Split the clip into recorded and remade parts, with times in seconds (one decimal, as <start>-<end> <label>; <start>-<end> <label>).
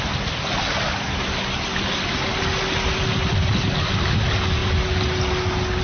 0.0-5.8 recorded